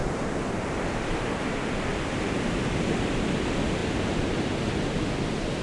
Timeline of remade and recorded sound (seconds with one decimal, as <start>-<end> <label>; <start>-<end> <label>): 0.0-5.6 recorded